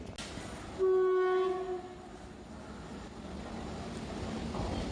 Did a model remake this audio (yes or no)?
no